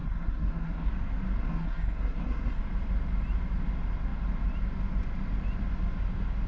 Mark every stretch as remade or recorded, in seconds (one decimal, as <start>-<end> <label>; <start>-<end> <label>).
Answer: 0.0-0.9 remade; 0.9-1.4 recorded; 1.4-2.6 remade; 2.6-6.5 recorded